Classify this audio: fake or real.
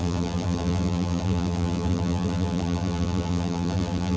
fake